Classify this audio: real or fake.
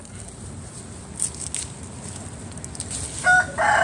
real